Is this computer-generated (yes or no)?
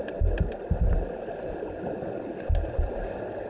no